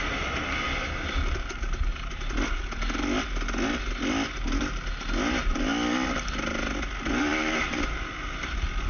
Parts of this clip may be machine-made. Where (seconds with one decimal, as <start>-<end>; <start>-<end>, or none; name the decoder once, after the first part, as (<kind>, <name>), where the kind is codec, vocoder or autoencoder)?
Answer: 0.0-1.9 (vocoder, BigVGAN v2); 5.3-5.7; 7.2-8.9